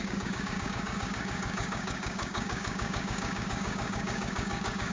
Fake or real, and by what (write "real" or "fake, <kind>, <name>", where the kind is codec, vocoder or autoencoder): fake, codec, DAC